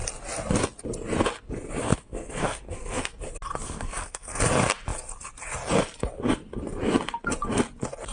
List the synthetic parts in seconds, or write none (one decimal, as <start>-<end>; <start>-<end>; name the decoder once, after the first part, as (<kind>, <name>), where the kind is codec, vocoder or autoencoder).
1.8-3.1 (codec, SNAC); 3.6-4.4